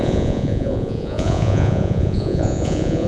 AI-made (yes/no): yes